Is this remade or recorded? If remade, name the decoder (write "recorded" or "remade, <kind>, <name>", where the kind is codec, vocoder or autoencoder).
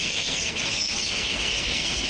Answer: remade, codec, SNAC